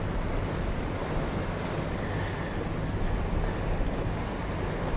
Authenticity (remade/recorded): recorded